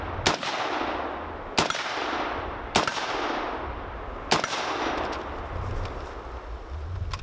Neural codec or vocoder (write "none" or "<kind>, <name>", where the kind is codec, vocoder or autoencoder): none